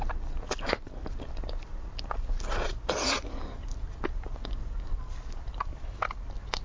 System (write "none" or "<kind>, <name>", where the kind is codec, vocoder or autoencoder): none